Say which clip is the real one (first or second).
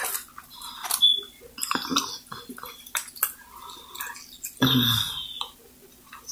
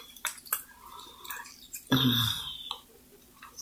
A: first